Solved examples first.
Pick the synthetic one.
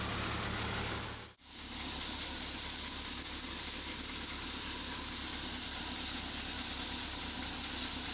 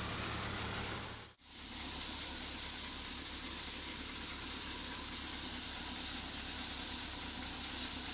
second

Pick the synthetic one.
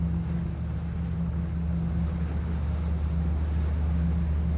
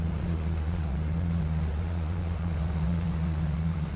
second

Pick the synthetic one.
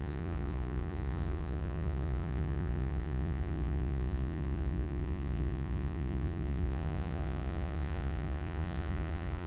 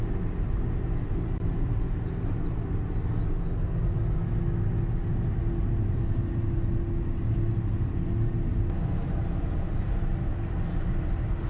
first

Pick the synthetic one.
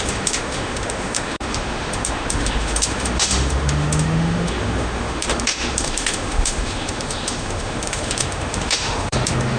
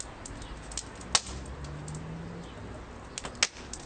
first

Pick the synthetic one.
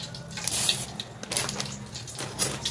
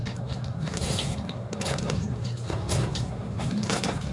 second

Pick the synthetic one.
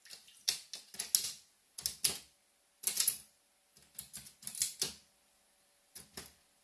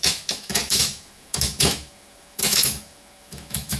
second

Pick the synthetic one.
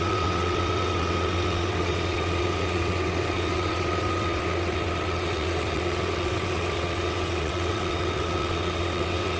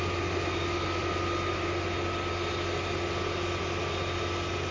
first